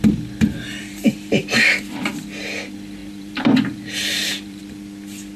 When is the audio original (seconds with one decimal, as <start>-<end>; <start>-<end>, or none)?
0.0-0.8; 2.1-3.0; 4.6-5.4